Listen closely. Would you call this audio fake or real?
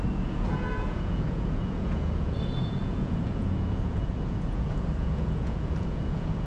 fake